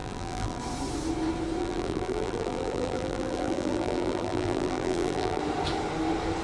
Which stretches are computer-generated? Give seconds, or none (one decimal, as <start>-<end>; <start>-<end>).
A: 0.0-0.6; 1.6-5.4